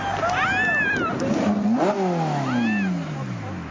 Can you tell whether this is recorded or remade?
recorded